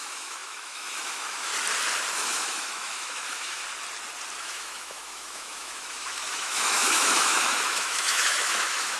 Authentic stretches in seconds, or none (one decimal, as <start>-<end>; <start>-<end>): 1.5-2.1; 3.6-4.4